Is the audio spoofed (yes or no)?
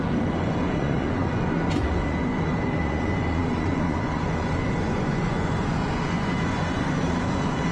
yes